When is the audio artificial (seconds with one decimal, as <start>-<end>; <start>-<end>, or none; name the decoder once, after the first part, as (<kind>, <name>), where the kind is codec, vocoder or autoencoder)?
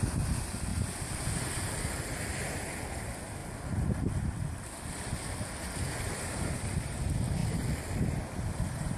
0.7-1.6 (vocoder, BigVGAN v2)